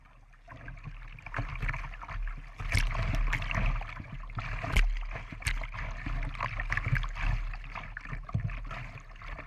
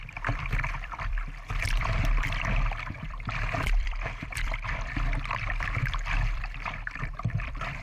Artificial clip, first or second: second